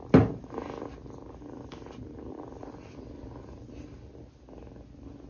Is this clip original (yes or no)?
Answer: yes